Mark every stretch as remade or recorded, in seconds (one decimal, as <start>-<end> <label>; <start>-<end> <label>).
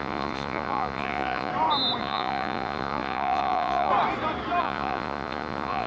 0.0-1.5 remade; 1.5-2.0 recorded; 2.0-3.9 remade; 3.9-4.6 recorded; 4.6-5.9 remade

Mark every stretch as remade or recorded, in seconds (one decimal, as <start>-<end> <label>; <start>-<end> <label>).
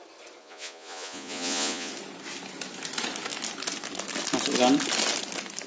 0.0-0.4 recorded; 0.4-1.9 remade; 1.9-5.7 recorded